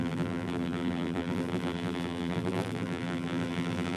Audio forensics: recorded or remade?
remade